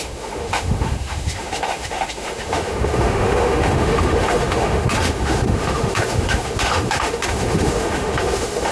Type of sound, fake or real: fake